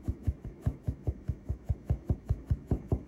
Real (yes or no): no